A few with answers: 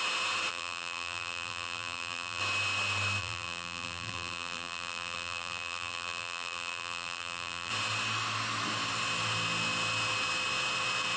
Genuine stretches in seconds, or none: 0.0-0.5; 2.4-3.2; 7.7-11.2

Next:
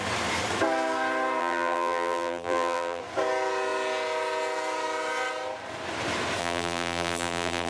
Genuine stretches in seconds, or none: 0.0-1.4; 3.0-6.4

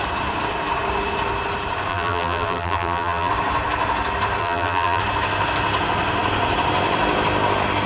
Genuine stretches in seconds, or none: 0.0-1.9; 3.3-4.4; 5.0-7.9